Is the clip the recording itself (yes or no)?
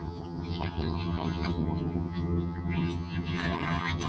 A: no